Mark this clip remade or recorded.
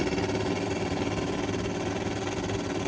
recorded